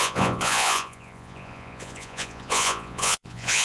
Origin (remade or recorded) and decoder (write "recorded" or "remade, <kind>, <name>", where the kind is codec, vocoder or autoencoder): remade, vocoder, Vocos